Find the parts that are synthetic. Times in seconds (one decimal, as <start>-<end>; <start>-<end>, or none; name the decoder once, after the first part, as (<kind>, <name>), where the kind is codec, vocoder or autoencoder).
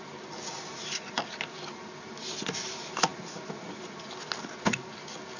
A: none